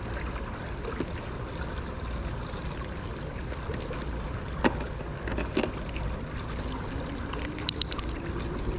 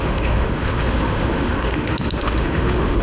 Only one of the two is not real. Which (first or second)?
second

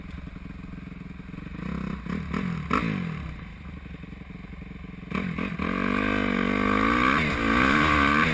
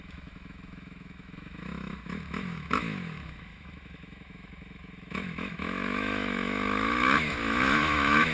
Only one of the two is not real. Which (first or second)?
second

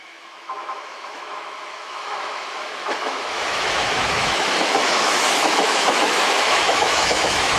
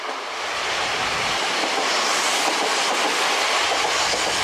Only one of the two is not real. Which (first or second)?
first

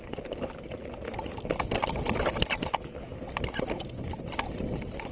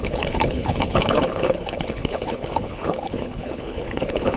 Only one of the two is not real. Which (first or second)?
second